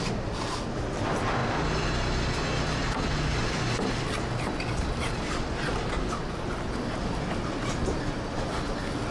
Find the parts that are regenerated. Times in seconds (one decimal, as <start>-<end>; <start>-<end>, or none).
none